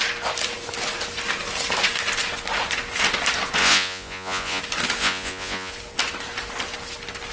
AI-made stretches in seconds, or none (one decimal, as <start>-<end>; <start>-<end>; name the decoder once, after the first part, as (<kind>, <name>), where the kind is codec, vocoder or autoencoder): 3.6-4.6 (vocoder, Vocos); 5.0-5.7